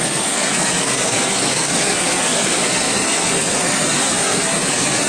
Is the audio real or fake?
fake